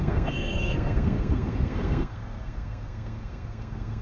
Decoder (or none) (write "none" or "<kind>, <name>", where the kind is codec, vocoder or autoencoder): codec, SNAC